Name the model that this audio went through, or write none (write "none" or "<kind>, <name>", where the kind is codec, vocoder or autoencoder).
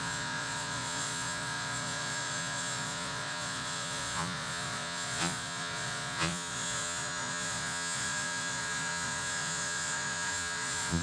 vocoder, Vocos